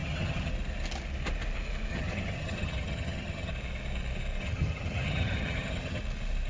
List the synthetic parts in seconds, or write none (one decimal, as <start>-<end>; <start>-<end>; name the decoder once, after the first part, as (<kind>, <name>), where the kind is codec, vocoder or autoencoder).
0.0-0.5 (vocoder, HiFi-GAN); 1.9-3.5; 4.4-6.0